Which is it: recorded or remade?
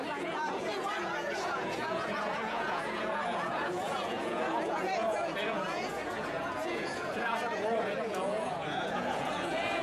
remade